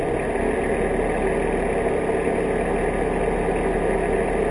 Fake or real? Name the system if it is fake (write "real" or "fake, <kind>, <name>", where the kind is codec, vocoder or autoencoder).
real